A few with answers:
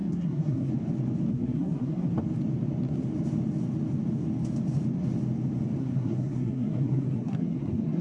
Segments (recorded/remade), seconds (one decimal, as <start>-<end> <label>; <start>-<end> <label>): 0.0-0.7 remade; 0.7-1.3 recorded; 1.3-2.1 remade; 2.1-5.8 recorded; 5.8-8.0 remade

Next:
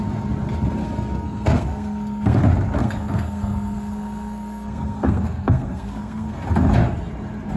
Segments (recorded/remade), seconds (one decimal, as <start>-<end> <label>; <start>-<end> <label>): 0.0-0.8 recorded; 0.8-2.4 remade; 2.4-2.8 recorded; 2.8-6.4 remade; 6.4-7.6 recorded

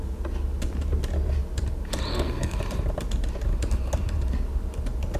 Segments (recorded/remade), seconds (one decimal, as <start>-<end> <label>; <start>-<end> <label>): 0.0-2.1 recorded; 2.1-2.6 remade; 2.6-5.2 recorded

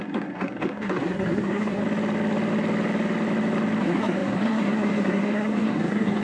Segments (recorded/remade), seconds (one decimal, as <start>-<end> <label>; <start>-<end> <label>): 0.0-1.8 remade; 1.8-3.8 recorded; 3.8-6.2 remade